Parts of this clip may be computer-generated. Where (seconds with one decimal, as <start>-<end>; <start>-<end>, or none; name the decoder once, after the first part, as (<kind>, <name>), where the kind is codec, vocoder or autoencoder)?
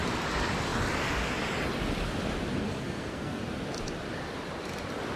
2.6-3.4 (codec, SNAC)